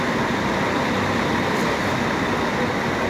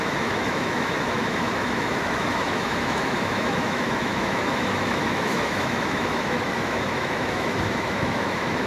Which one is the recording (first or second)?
first